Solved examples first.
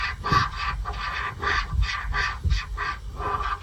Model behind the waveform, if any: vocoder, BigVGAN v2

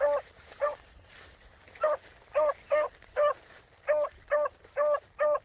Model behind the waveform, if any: none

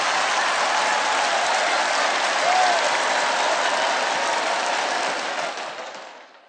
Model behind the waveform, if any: none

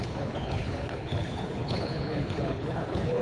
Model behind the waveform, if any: codec, HILCodec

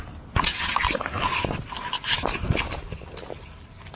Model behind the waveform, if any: none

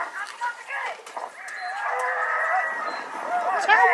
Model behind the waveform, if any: none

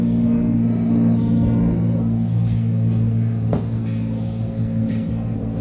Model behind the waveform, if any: codec, SNAC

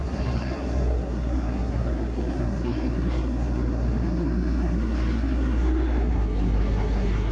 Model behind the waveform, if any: codec, SNAC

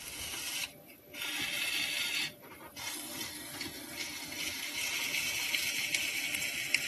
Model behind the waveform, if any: none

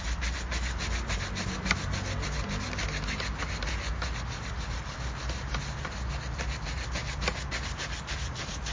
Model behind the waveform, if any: none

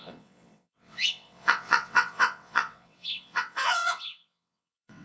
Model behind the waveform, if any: vocoder, WaveNeXt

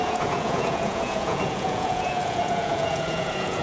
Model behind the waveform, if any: vocoder, Vocos